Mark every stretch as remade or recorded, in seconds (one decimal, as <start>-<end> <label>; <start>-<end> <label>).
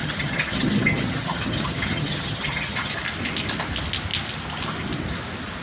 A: 0.0-2.9 remade; 2.9-5.6 recorded